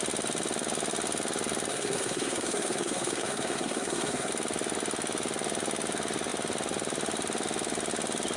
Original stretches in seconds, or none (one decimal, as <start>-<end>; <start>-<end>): 0.0-1.7; 4.3-8.4